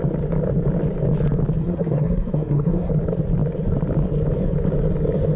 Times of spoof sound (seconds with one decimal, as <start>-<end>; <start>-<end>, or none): 1.6-2.9